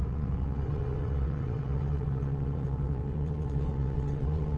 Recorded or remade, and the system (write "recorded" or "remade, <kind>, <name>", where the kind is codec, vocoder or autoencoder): remade, vocoder, WaveNeXt